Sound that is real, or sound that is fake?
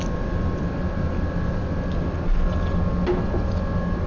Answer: real